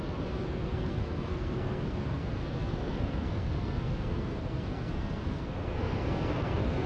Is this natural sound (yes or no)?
no